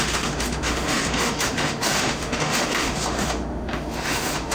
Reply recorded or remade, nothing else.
remade